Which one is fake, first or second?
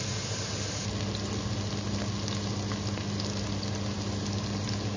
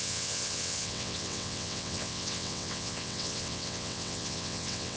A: second